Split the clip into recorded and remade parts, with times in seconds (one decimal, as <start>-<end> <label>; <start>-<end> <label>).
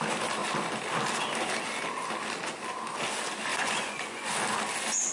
0.0-3.5 recorded; 3.5-4.3 remade; 4.3-5.1 recorded